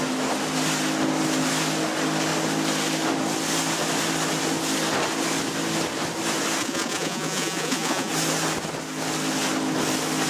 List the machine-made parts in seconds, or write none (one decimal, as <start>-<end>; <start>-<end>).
6.6-8.1